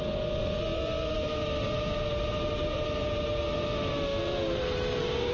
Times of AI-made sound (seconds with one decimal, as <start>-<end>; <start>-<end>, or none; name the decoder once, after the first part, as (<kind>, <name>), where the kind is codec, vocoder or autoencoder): none